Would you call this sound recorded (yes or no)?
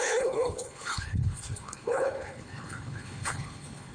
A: no